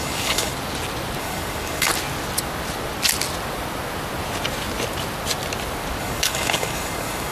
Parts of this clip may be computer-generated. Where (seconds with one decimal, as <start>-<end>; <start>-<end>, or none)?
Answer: 0.0-0.5; 1.2-1.9; 6.0-7.3